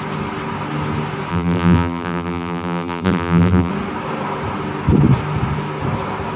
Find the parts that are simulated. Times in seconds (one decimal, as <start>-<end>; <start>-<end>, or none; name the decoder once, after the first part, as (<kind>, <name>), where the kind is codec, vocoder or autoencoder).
1.3-3.7 (vocoder, BigVGAN v2)